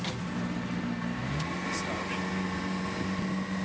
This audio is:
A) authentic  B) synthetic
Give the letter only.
A